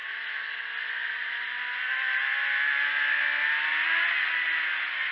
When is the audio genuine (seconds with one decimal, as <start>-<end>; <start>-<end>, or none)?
0.0-5.1